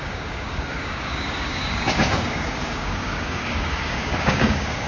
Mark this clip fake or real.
fake